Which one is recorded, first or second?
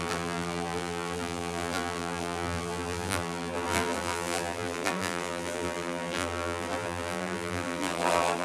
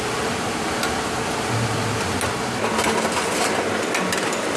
second